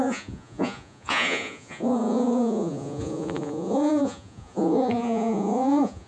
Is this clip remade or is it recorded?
remade